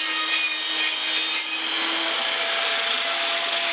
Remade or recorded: recorded